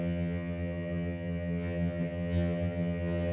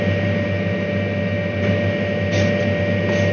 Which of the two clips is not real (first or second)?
first